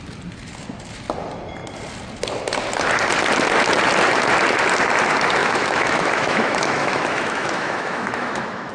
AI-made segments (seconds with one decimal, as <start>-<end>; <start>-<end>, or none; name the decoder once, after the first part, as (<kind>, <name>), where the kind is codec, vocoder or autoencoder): 5.4-8.7 (autoencoder, DAC-VAE)